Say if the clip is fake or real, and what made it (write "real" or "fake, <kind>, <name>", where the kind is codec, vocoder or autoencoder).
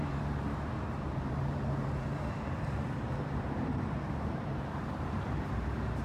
fake, vocoder, BigVGAN v2